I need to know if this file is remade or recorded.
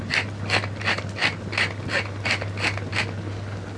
recorded